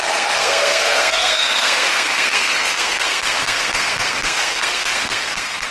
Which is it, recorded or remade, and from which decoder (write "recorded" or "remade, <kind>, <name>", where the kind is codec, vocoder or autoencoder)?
remade, codec, SNAC